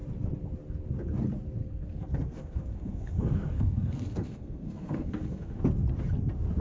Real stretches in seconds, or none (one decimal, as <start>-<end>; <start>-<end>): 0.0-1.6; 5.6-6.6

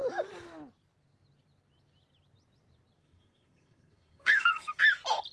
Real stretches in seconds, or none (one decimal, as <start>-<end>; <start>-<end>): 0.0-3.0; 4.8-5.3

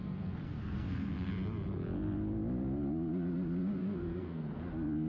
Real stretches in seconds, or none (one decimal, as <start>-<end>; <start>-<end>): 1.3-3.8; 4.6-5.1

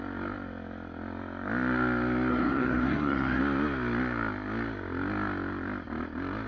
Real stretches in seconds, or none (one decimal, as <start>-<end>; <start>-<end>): 0.0-2.3; 3.4-6.5

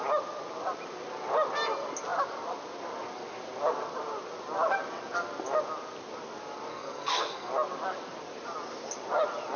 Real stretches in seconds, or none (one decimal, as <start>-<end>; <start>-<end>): 0.0-6.7; 7.5-9.6

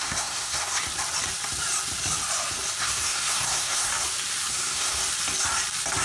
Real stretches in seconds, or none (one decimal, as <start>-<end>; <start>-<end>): 0.8-2.8; 3.9-4.5; 5.0-6.0

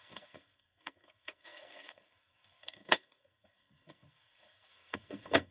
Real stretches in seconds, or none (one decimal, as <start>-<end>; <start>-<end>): none

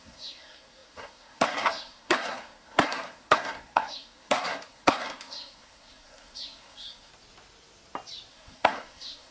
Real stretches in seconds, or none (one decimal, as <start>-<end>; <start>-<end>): 7.1-8.3